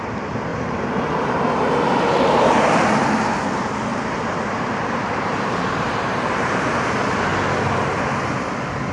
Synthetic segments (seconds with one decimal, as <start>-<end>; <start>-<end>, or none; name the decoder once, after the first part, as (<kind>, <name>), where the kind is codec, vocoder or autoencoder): 0.5-1.8 (vocoder, BigVGAN v2); 3.9-6.8